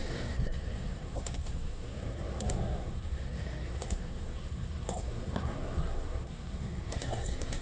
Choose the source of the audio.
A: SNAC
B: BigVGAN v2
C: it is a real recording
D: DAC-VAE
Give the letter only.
A